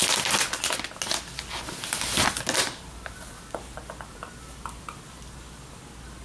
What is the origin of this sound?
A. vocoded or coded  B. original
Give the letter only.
B